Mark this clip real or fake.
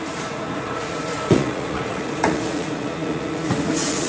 fake